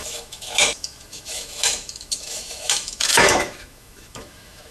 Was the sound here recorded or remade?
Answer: remade